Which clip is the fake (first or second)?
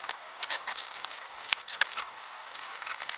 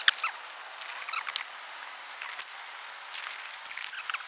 first